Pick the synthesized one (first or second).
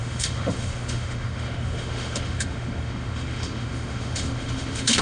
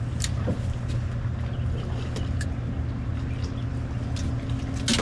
first